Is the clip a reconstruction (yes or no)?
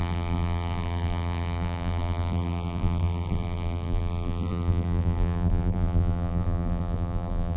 yes